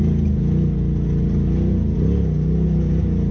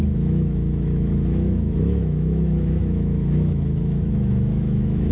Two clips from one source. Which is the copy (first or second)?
second